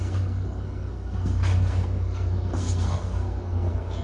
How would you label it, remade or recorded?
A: remade